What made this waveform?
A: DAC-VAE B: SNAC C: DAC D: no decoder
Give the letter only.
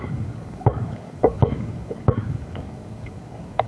C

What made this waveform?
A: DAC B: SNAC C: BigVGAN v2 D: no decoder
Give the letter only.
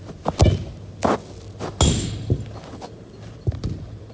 D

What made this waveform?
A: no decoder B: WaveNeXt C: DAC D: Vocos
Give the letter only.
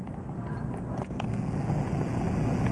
A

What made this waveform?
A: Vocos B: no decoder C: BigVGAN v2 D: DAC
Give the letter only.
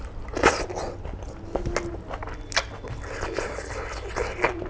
B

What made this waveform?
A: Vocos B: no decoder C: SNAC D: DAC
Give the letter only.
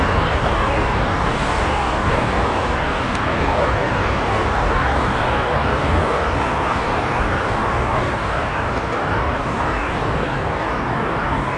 D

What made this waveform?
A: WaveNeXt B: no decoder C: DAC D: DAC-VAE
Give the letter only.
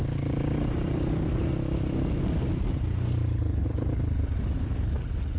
B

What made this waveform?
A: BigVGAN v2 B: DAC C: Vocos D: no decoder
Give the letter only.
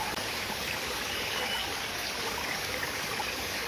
B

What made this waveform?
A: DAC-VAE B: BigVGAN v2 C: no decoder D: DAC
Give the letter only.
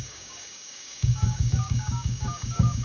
D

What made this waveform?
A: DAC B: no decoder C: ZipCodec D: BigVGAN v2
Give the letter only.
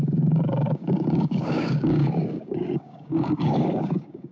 A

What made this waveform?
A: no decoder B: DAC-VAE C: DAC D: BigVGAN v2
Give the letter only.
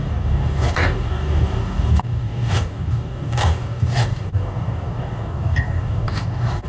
C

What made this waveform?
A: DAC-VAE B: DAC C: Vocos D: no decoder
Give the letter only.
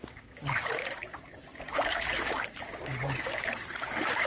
B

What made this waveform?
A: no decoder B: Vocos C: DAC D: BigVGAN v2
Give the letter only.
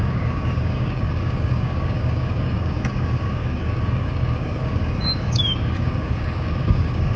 C